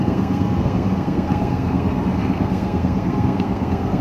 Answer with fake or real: fake